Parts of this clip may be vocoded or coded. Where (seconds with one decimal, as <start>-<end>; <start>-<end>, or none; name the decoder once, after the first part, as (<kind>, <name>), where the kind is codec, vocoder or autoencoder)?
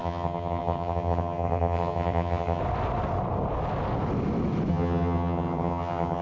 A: 0.0-2.6 (vocoder, HiFi-GAN); 4.7-6.2